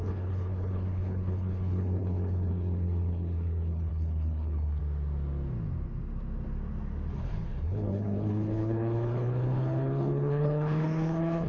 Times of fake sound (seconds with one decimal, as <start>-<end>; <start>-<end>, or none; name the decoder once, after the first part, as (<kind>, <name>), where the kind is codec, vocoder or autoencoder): 0.0-4.8 (codec, HILCodec); 7.1-11.5